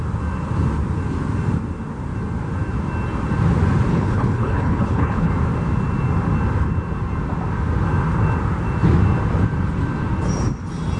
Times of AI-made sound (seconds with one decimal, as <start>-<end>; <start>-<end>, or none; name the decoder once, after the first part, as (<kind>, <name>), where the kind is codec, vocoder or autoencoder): 3.9-5.3 (codec, HILCodec)

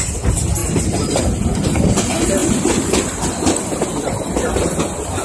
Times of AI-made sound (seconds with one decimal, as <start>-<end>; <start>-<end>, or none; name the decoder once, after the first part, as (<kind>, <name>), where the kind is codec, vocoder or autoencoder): none

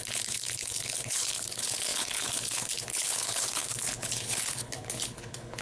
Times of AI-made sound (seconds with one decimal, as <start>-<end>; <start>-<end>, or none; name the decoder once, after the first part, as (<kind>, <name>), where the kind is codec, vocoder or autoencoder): 0.0-5.6 (codec, HILCodec)